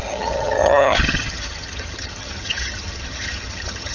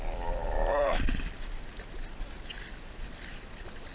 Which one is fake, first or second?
first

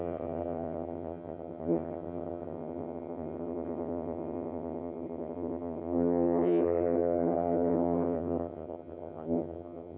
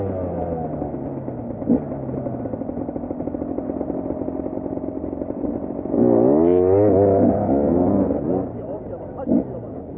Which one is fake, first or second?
first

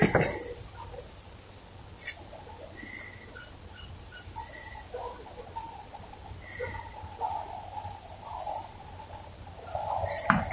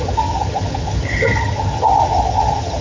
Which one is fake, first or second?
second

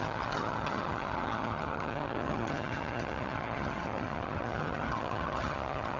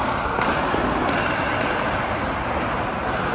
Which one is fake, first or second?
first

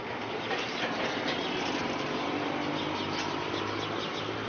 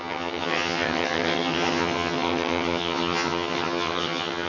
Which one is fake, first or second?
second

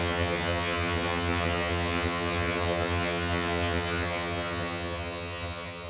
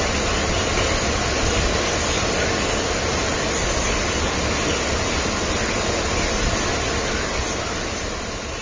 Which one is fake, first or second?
first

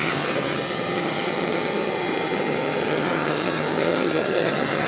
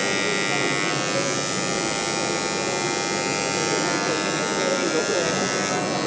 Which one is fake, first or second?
first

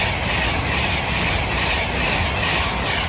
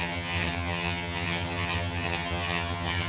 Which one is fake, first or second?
second